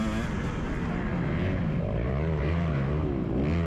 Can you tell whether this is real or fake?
real